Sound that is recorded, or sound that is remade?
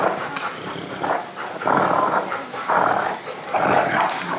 recorded